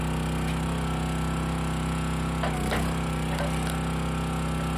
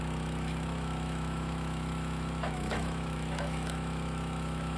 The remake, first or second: second